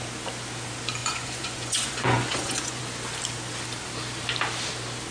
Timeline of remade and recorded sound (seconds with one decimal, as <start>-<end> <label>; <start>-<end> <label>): 0.0-1.0 recorded; 1.0-2.8 remade; 2.8-5.1 recorded